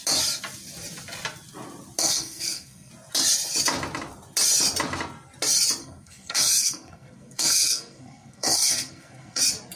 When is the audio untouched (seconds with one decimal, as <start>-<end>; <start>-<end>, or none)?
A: 0.0-2.0; 2.9-5.8; 9.4-9.8